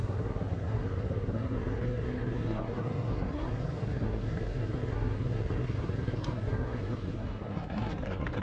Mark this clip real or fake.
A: fake